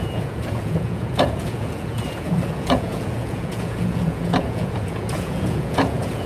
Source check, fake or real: fake